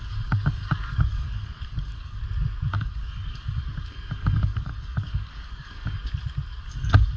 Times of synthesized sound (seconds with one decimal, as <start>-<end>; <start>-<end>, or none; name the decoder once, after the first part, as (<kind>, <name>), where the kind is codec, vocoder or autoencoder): 0.0-2.2 (codec, DAC); 2.7-6.0; 6.6-7.2